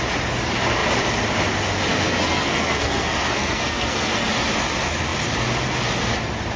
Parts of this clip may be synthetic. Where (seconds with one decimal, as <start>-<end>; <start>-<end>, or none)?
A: 1.9-4.3